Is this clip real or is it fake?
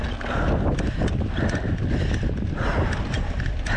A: real